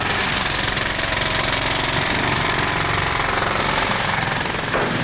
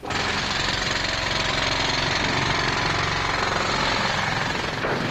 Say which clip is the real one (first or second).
second